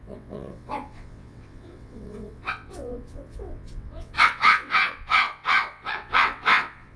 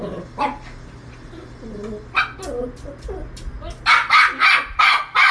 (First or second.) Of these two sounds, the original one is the second